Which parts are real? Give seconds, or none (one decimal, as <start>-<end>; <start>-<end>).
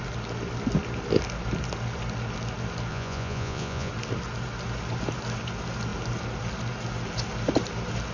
0.0-2.9; 3.9-8.1